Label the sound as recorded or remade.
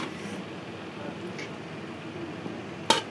recorded